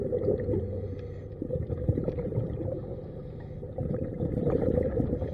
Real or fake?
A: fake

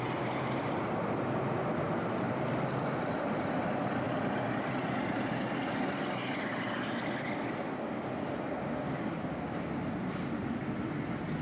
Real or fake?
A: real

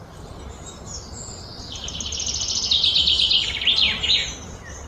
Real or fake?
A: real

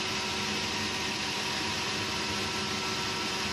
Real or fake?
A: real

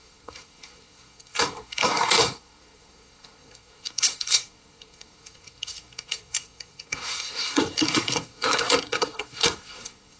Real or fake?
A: fake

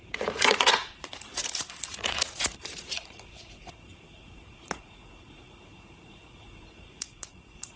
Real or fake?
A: fake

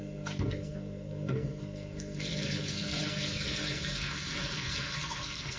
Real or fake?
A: fake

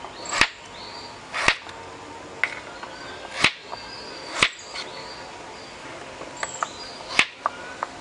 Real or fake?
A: real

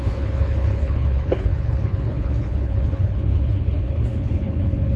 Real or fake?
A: fake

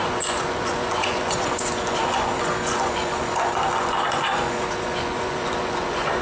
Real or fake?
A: fake